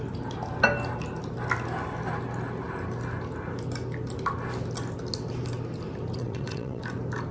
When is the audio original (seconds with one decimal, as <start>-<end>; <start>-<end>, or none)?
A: 0.0-6.2; 6.8-7.3